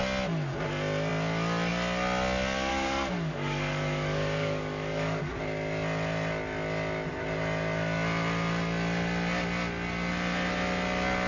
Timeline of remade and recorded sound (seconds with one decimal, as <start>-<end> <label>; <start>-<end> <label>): 0.0-2.7 recorded; 2.7-5.4 remade; 5.4-11.3 recorded